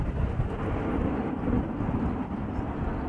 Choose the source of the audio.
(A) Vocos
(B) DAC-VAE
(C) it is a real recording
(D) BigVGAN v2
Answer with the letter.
C